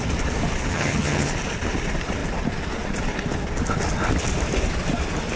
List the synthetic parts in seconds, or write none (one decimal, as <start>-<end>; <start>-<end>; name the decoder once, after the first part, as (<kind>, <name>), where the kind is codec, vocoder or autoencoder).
0.7-1.3 (vocoder, HiFi-GAN)